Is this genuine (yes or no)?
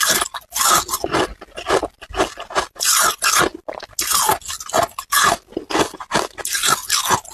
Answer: yes